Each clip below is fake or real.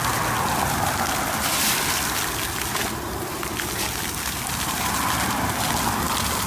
real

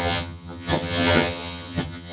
fake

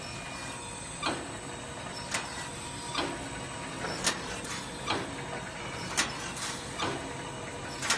real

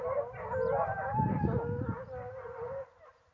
real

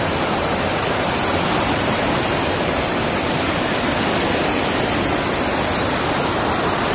real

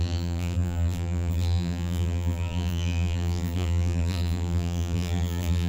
fake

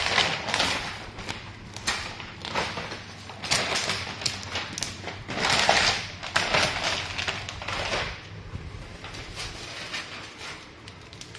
real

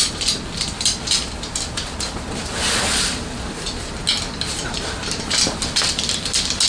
real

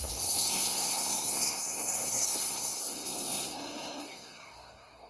fake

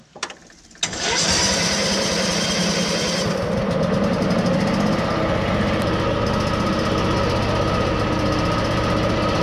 real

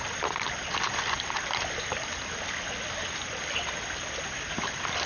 real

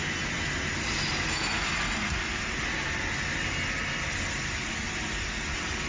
real